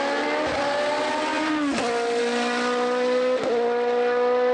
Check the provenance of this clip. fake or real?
real